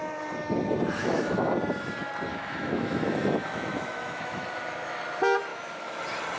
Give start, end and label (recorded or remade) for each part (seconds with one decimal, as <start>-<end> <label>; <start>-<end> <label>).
0.0-1.0 recorded; 1.0-1.5 remade; 1.5-2.3 recorded; 2.3-5.0 remade; 5.0-5.5 recorded; 5.5-6.0 remade; 6.0-6.4 recorded